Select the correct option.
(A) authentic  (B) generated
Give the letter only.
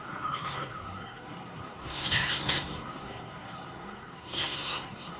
B